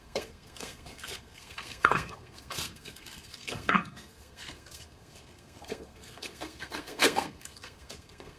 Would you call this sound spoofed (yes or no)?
yes